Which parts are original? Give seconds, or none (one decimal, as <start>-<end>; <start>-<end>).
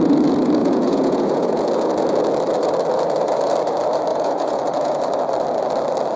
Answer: 0.0-0.6; 1.6-4.1; 5.0-6.2